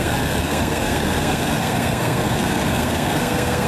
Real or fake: fake